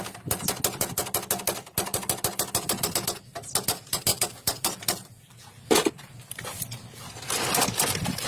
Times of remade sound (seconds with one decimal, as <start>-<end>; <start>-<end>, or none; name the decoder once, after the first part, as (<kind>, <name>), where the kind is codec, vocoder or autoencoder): 4.1-5.6 (vocoder, BigVGAN v2)